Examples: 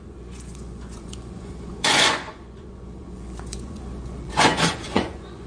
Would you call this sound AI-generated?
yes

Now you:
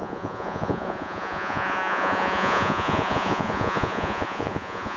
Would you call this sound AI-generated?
yes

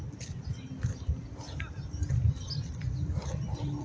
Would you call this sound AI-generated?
no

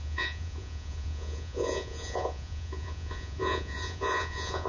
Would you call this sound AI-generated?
yes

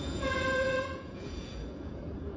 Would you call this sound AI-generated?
yes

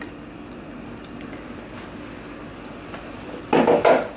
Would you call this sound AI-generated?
no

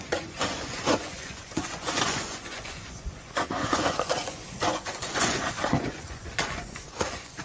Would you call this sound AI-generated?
yes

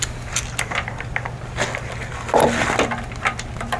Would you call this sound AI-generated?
no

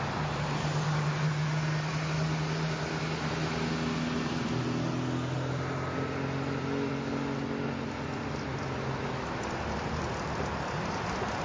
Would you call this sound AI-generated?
no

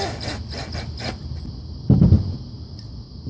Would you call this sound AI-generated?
no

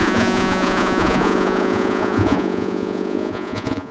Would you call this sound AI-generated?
yes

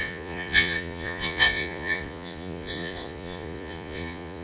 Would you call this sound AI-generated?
yes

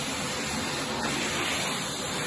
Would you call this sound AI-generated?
no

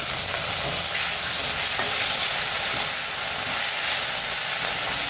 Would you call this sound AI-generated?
no